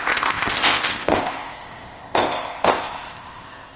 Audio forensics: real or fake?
fake